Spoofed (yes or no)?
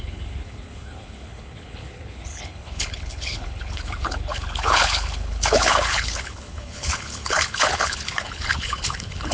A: yes